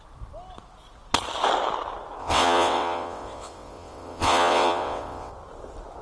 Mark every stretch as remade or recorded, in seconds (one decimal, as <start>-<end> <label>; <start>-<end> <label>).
0.0-2.2 recorded; 2.2-5.3 remade; 5.3-6.0 recorded